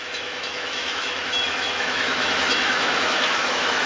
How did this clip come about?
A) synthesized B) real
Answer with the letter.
A